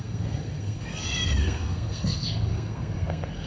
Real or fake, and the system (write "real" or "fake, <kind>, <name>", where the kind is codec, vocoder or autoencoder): fake, codec, SNAC